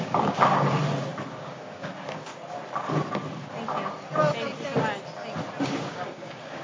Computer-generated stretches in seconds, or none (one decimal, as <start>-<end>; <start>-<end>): 0.0-0.8; 1.3-2.3; 5.6-6.6